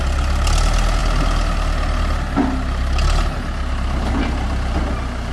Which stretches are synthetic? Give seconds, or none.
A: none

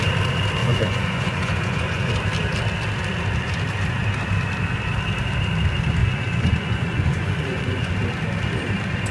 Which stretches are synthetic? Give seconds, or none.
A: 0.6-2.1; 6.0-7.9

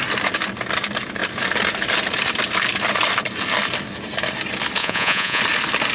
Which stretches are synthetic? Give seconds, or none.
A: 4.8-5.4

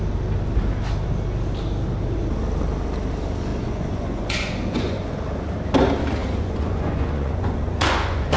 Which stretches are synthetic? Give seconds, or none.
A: 3.5-5.1; 6.2-8.4